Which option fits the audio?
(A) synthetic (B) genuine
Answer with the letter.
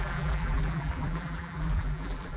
A